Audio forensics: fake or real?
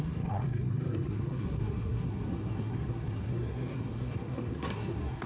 fake